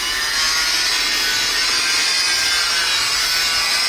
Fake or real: real